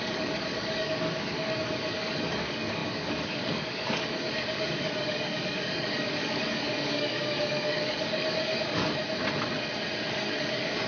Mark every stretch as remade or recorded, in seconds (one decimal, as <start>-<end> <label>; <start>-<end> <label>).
0.0-9.0 remade; 9.0-10.1 recorded; 10.1-10.9 remade